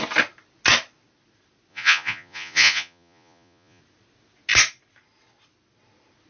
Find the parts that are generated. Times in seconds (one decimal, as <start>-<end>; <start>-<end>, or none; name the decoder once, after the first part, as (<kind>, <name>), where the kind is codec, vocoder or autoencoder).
1.7-3.8 (vocoder, Vocos)